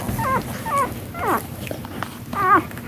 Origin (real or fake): real